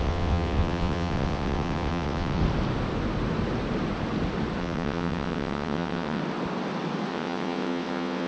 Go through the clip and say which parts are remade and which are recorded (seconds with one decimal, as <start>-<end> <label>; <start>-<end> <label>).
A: 0.0-2.4 remade; 2.4-4.6 recorded; 4.6-6.2 remade; 6.2-7.1 recorded; 7.1-8.3 remade